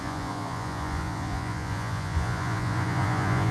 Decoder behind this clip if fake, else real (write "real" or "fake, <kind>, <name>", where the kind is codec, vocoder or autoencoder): fake, vocoder, Vocos